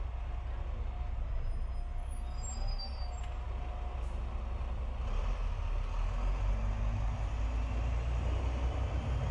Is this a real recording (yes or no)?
yes